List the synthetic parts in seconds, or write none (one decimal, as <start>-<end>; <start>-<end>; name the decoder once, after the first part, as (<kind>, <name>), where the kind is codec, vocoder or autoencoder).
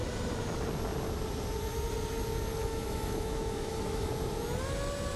2.6-4.1 (autoencoder, DAC-VAE)